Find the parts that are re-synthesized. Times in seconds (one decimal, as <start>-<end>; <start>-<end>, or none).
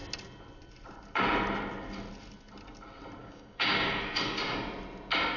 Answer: 3.2-4.0